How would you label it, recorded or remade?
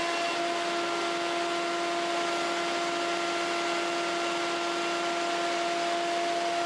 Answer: recorded